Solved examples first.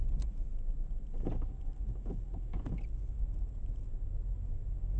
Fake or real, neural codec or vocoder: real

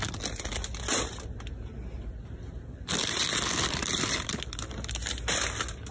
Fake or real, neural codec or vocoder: real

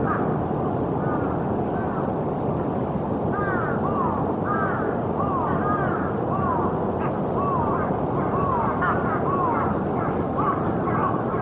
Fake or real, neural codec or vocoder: real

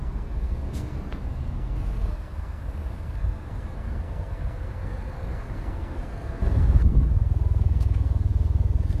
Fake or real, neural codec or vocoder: fake, codec, SNAC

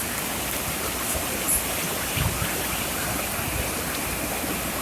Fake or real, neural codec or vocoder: real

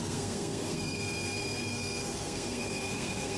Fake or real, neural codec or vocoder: fake, codec, SNAC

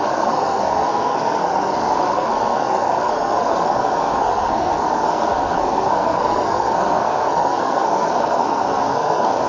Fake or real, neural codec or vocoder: fake, codec, SNAC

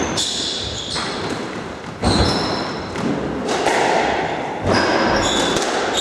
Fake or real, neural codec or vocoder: real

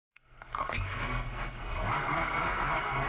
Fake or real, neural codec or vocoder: fake, codec, SNAC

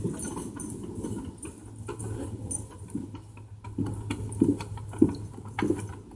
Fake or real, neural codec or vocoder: real